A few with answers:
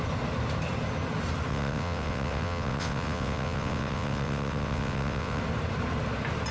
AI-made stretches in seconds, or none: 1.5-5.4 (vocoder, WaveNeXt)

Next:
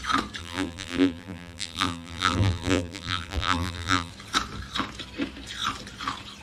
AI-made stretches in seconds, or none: 0.4-4.1 (vocoder, BigVGAN v2)

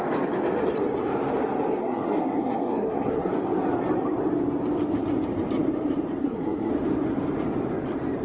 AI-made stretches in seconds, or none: 1.8-3.3 (codec, SNAC); 6.2-6.7

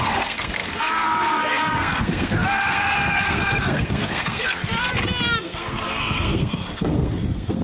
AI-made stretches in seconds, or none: 0.0-4.6 (codec, SNAC); 5.4-7.6

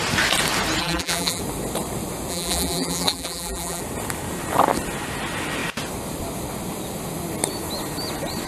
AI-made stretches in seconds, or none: 0.8-1.4 (vocoder, BigVGAN v2); 2.3-3.8